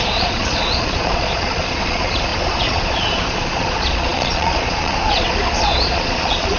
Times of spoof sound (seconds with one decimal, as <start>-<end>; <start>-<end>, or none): 0.0-6.6